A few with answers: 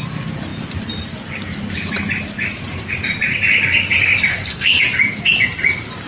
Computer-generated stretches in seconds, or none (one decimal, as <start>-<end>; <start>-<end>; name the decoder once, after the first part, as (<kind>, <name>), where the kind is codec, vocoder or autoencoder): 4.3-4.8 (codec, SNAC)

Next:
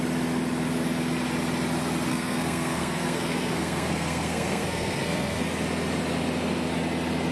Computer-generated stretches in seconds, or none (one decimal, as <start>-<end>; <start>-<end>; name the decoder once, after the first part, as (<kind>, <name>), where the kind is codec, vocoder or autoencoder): 2.1-5.4 (codec, SNAC)

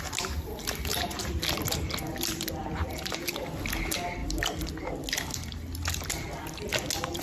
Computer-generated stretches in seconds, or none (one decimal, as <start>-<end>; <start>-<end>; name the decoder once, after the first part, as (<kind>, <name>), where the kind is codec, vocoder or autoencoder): 0.9-1.4 (vocoder, BigVGAN v2); 2.6-3.5; 4.2-4.7

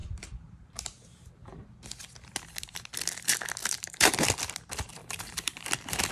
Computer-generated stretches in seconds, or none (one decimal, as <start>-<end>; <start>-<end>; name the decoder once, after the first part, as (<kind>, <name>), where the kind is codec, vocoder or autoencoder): 0.0-1.6 (vocoder, BigVGAN v2); 3.6-4.2; 5.0-5.6

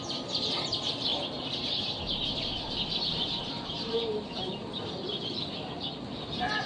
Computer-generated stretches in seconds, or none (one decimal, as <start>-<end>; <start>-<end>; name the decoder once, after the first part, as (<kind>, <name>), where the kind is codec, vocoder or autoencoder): 3.4-4.5 (vocoder, BigVGAN v2)

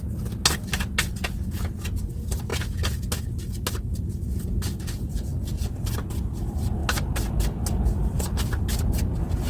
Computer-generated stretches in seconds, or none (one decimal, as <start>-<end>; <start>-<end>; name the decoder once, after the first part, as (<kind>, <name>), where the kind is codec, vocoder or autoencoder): none